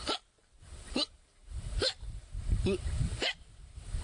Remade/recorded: remade